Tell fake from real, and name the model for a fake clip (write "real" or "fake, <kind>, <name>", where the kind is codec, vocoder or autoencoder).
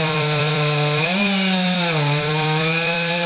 fake, vocoder, BigVGAN v2